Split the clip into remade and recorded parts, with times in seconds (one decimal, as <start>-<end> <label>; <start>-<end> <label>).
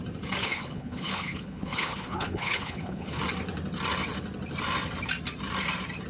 0.0-0.4 recorded; 0.4-3.2 remade; 3.2-6.1 recorded